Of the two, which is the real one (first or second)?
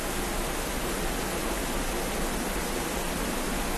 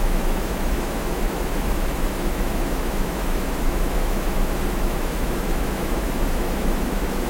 first